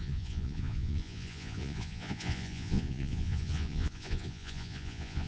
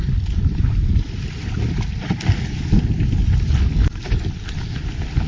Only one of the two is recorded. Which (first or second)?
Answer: second